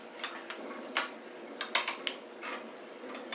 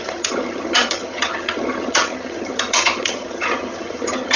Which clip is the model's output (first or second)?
second